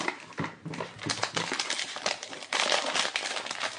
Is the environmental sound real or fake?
fake